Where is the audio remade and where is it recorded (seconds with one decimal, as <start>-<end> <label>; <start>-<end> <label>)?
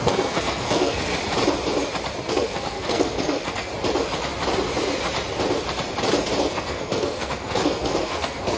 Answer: 0.0-1.1 remade; 1.1-2.3 recorded; 2.3-3.7 remade; 3.7-6.4 recorded; 6.4-8.6 remade